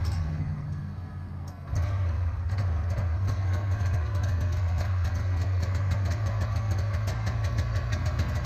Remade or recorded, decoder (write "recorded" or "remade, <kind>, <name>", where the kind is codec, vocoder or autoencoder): remade, codec, SNAC